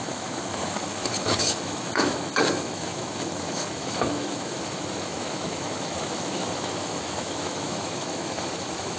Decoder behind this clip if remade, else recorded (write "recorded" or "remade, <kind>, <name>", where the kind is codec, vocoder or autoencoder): remade, autoencoder, DAC-VAE